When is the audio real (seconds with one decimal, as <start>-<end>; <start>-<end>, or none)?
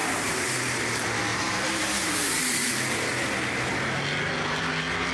0.9-1.3; 2.7-5.1